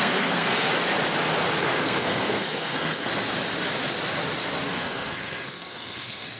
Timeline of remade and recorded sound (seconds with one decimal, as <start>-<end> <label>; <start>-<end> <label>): 0.0-0.7 remade; 0.7-1.6 recorded; 1.6-3.1 remade; 3.1-4.7 recorded; 4.7-6.4 remade